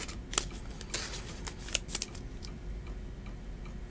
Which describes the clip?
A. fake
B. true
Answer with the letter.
B